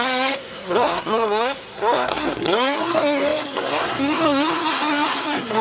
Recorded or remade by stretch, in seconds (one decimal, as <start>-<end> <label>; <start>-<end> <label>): 0.0-5.6 remade

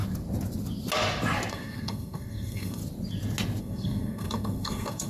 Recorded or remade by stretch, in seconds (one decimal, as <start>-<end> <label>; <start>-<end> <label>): 0.0-1.5 recorded; 1.5-2.8 remade; 2.8-3.6 recorded; 3.6-5.1 remade

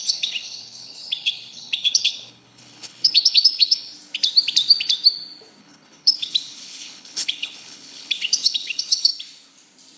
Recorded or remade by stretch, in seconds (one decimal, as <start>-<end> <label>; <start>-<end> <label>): 0.0-3.9 remade; 3.9-5.6 recorded; 5.6-9.1 remade; 9.1-10.0 recorded

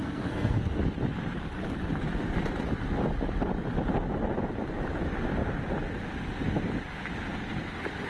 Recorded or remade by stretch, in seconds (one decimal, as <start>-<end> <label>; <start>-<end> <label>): 0.0-0.8 remade; 0.8-8.1 recorded